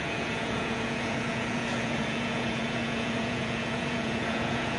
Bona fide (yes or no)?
no